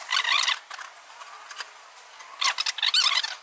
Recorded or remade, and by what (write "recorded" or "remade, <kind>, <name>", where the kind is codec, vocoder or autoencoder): recorded